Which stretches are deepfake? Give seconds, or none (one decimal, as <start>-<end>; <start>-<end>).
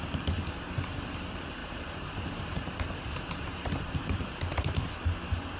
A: 1.6-4.3